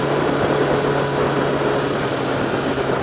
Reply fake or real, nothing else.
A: real